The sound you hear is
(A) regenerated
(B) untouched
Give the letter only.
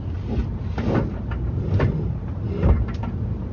A